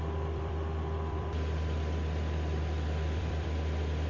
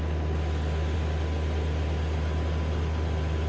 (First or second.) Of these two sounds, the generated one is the first